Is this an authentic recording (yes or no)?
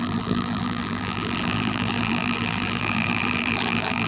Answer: no